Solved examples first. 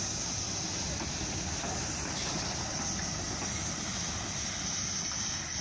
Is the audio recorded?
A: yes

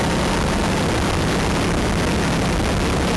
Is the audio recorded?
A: yes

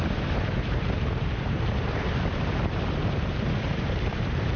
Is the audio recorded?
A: no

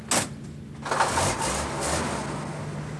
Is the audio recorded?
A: yes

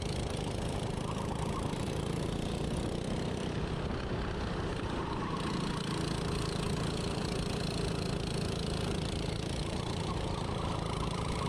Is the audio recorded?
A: no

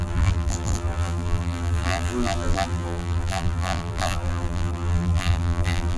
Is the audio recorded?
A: no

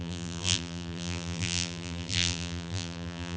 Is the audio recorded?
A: no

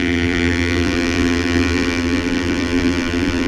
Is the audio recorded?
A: no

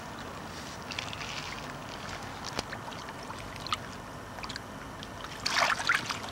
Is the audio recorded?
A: yes